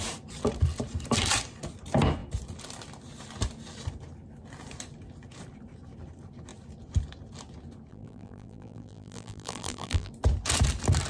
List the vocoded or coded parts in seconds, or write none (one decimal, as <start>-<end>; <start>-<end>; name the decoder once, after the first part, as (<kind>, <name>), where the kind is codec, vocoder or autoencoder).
7.9-10.1 (vocoder, BigVGAN v2)